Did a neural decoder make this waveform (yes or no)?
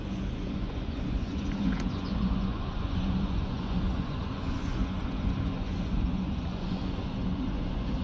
yes